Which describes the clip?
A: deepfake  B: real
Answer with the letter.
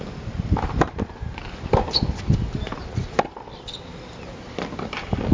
B